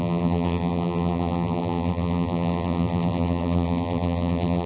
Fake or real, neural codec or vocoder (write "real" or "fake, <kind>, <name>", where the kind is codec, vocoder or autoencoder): fake, vocoder, BigVGAN v2